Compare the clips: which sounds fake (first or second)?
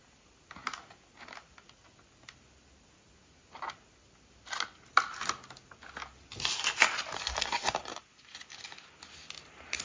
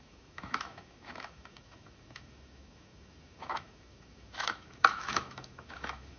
second